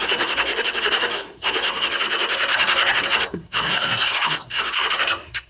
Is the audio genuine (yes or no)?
no